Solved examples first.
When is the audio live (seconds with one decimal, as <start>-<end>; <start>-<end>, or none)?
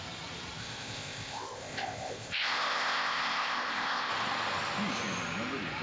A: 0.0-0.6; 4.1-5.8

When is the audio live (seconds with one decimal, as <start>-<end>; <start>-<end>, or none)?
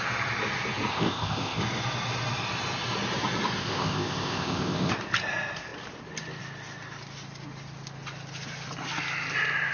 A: 0.0-0.9; 1.6-3.6; 4.9-9.7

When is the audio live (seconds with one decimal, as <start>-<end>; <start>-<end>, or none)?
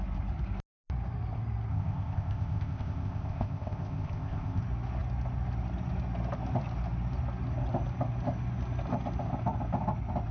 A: 0.0-1.7; 4.6-10.3